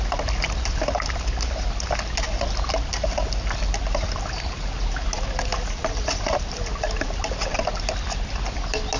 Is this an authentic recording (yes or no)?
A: yes